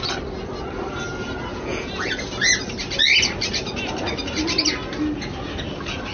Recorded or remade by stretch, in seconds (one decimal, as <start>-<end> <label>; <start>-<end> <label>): 0.0-1.5 recorded; 1.5-2.1 remade; 2.1-6.1 recorded